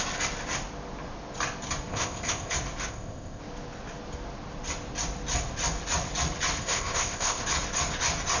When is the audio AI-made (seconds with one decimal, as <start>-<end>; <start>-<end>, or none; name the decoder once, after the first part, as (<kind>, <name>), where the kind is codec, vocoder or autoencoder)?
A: 1.9-2.5 (codec, ZipCodec); 2.9-3.4; 6.6-7.4